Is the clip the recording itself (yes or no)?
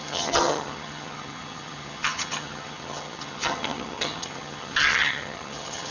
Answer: no